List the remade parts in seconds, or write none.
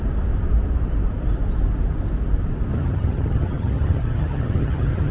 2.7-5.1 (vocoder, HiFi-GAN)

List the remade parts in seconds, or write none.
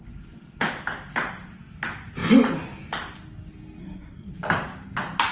3.8-4.3 (codec, SNAC)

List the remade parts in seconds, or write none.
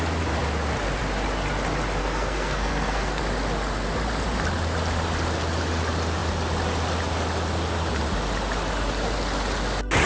2.0-3.2 (codec, SNAC)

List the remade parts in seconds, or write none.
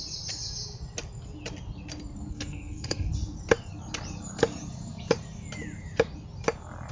2.3-3.1 (codec, SNAC)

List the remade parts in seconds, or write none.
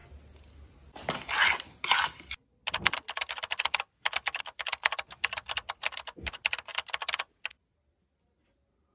none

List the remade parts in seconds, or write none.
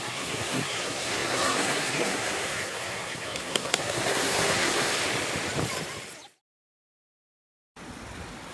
0.0-4.9 (codec, SNAC)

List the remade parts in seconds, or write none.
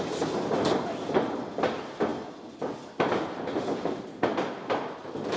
none